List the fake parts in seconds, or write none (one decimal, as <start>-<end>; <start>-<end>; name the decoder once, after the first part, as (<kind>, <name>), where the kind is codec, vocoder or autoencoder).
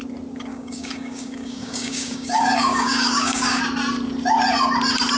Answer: 0.5-3.6 (codec, DAC)